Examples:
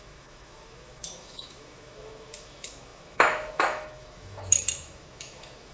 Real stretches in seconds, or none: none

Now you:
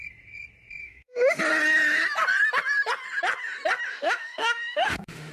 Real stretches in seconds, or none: 0.0-0.8; 1.4-3.9

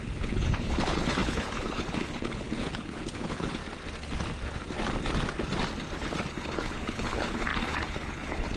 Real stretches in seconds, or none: 3.6-6.3

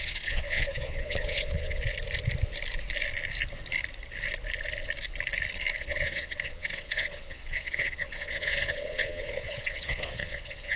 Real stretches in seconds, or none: 1.8-5.8

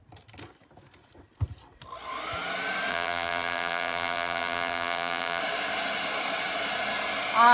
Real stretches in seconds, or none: 0.0-2.9; 5.4-7.5

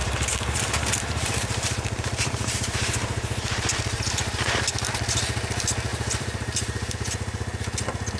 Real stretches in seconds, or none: 4.9-5.9; 6.9-8.2

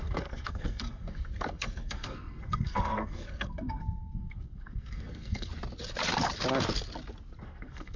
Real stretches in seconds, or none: 5.5-7.4